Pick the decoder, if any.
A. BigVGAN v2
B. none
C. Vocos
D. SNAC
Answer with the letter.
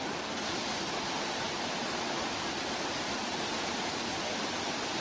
B